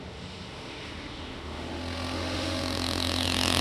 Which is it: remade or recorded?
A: remade